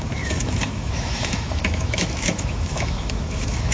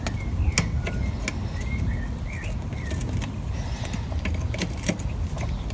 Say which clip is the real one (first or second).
second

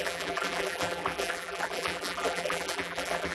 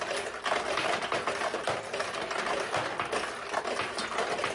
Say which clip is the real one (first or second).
second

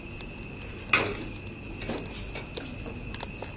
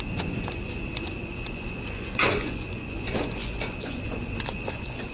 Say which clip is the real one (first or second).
first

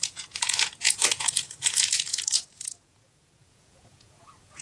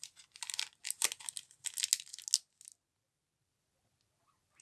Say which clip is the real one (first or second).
second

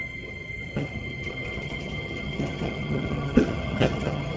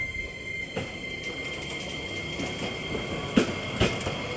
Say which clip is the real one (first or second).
second